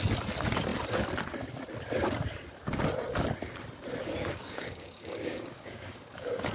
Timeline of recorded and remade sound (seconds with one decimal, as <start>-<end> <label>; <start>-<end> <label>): 0.0-4.0 recorded; 4.0-6.5 remade